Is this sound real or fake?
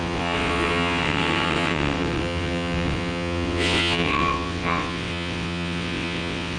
fake